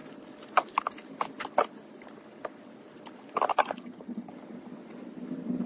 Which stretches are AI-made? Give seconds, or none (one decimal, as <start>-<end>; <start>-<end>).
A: 3.5-4.3